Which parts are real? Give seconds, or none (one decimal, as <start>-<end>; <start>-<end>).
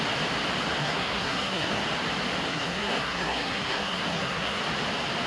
0.0-0.8; 1.8-2.5; 4.6-5.3